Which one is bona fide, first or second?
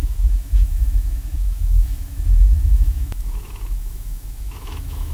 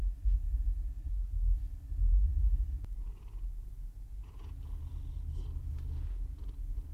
second